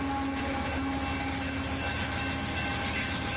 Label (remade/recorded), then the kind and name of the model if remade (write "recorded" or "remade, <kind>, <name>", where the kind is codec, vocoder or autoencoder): recorded